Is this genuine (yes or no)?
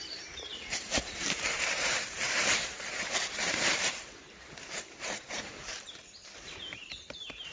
no